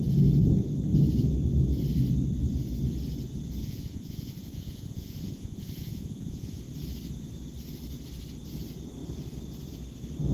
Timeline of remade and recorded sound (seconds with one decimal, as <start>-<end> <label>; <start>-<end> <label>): 0.0-3.6 recorded; 3.6-6.6 remade; 6.6-10.3 recorded